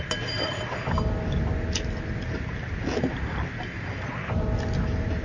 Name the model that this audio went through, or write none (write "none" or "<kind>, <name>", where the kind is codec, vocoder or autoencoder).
none